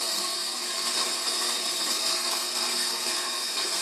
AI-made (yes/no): yes